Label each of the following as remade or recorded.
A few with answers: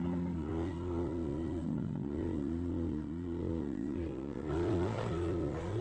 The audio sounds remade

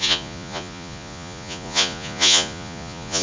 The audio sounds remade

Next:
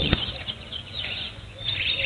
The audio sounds remade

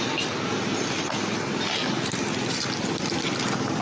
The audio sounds recorded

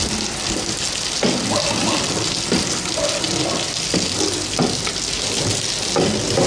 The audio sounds recorded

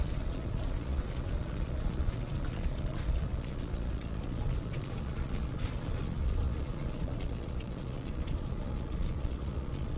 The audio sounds remade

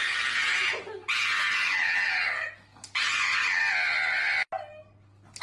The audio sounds recorded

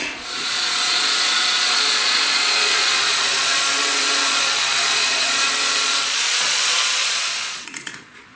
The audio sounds remade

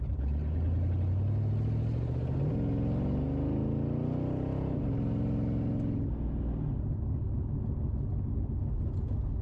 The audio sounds recorded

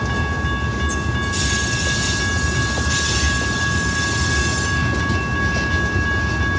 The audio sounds recorded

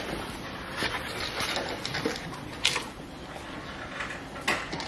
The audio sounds recorded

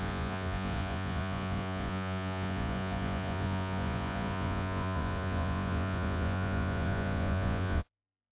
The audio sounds remade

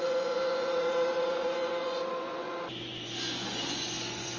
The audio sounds remade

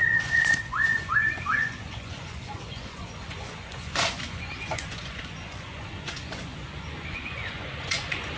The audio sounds remade